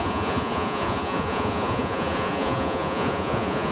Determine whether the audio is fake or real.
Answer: fake